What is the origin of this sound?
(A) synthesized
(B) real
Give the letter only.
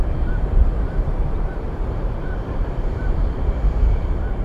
A